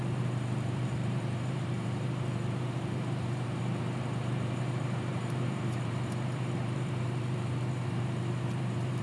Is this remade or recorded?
remade